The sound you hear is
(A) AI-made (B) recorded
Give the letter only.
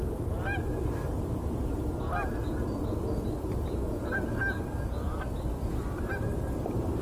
B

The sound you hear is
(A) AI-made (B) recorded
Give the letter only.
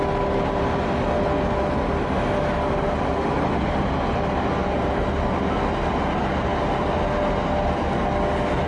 B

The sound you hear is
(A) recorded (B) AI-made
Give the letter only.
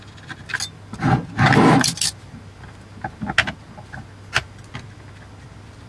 A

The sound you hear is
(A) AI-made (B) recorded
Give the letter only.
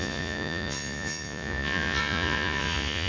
A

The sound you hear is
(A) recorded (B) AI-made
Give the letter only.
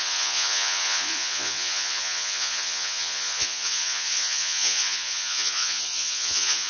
B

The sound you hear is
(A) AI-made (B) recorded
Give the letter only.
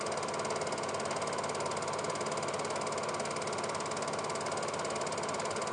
B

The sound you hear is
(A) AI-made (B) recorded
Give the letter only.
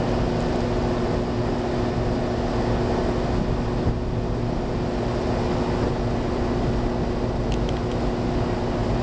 B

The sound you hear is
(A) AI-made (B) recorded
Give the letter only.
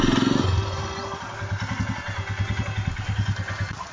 B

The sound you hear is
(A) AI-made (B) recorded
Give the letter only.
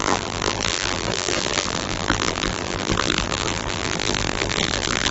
A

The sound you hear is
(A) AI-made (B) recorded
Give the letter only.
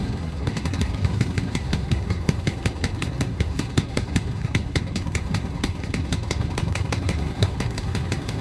A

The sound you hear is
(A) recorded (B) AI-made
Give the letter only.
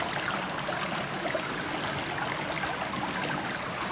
A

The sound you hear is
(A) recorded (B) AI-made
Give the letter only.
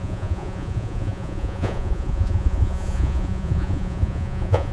B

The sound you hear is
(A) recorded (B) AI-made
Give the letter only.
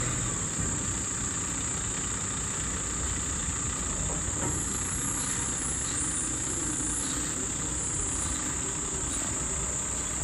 A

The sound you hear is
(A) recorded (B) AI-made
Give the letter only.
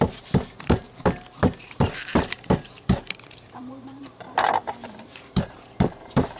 B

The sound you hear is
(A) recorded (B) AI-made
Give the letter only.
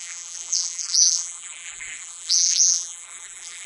B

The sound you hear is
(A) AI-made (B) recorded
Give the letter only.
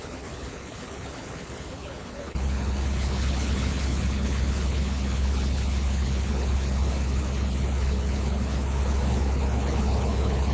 A